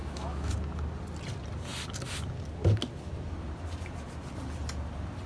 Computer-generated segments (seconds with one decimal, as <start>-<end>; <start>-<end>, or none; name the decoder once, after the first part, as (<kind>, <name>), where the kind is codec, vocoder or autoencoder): 0.0-0.5 (autoencoder, DAC-VAE)